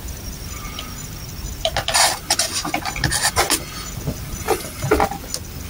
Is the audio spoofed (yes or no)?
no